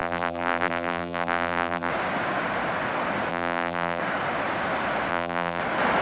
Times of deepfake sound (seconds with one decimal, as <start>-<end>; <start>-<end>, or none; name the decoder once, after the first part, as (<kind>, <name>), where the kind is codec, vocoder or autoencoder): 0.0-1.9 (vocoder, BigVGAN v2); 3.3-4.0; 5.1-5.6